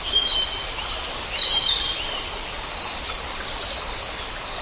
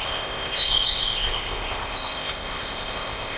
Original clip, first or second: first